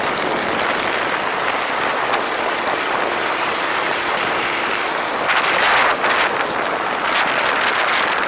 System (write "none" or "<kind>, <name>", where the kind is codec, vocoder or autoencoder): none